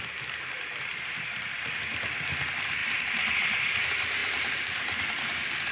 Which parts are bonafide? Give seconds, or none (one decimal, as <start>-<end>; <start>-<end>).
0.0-0.9; 1.7-2.8; 3.4-5.7